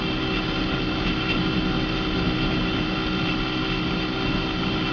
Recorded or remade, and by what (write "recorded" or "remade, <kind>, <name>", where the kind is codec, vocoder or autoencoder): recorded